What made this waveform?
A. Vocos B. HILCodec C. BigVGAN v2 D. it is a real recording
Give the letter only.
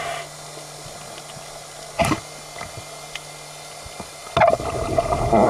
D